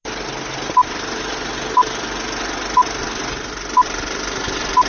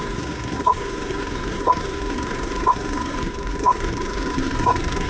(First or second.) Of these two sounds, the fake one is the second